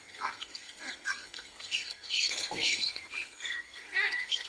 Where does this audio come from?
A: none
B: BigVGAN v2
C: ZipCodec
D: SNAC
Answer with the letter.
D